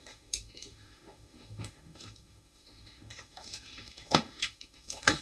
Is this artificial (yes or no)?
yes